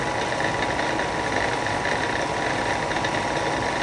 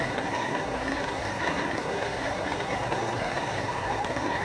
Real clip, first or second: first